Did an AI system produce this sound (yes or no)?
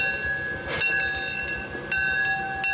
no